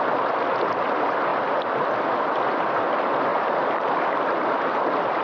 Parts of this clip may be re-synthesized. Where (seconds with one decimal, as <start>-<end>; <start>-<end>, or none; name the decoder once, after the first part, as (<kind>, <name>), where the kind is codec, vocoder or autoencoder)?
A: 3.3-4.1 (vocoder, BigVGAN v2)

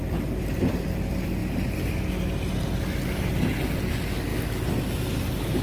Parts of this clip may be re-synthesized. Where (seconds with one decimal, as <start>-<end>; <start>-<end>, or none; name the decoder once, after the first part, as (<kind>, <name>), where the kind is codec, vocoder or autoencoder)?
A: none

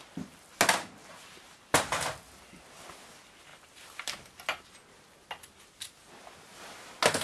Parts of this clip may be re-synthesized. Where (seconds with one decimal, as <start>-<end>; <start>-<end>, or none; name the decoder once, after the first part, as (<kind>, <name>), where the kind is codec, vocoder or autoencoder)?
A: 1.0-1.6 (vocoder, BigVGAN v2); 3.5-4.3

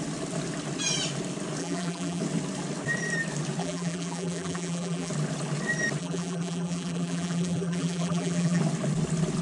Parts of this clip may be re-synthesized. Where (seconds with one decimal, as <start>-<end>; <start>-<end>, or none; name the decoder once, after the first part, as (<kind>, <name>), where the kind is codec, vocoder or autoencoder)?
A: 1.6-2.2 (vocoder, BigVGAN v2); 3.6-5.1; 6.0-8.6

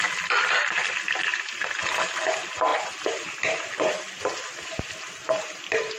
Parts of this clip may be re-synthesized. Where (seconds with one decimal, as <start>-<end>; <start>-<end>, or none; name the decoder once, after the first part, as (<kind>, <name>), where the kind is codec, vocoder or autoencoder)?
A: 0.6-1.5 (vocoder, BigVGAN v2)

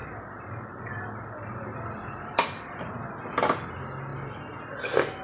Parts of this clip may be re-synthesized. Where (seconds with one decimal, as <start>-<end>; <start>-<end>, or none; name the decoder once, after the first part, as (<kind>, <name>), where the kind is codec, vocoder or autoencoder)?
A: 0.0-2.7 (vocoder, BigVGAN v2)